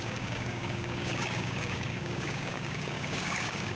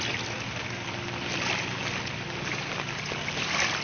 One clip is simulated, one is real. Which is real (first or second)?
second